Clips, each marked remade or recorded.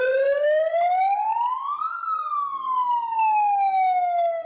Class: recorded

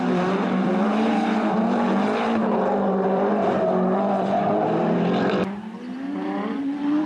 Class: remade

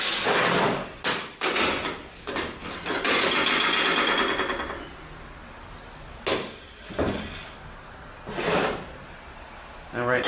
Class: recorded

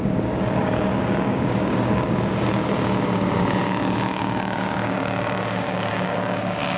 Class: remade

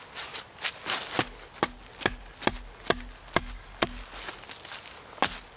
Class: recorded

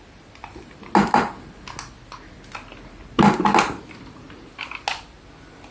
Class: recorded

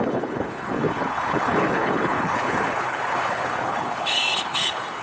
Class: remade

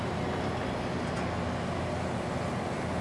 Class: recorded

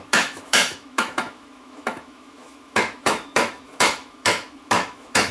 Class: remade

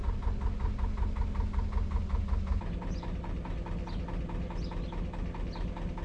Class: recorded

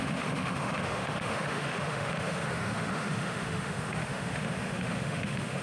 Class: remade